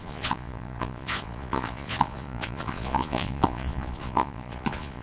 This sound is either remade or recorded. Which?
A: remade